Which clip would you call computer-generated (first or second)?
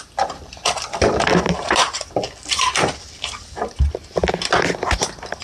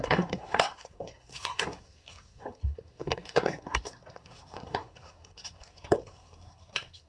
second